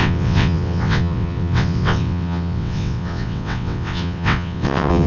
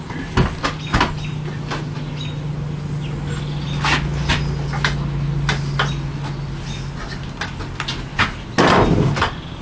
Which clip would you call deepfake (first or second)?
first